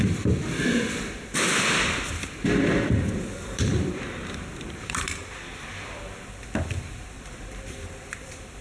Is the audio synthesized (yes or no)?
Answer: yes